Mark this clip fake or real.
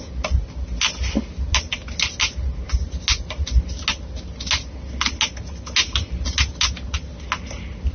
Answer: real